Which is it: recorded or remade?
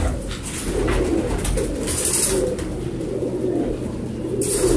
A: recorded